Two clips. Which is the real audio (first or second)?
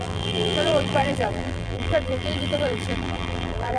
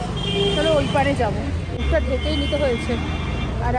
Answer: second